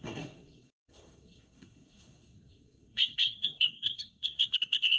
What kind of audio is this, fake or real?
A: fake